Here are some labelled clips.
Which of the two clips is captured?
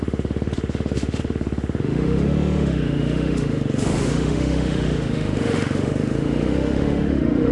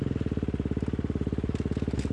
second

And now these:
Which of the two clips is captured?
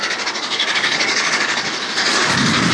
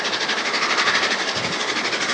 second